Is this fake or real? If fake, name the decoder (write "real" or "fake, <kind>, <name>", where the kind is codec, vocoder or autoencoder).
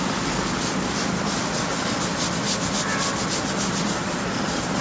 real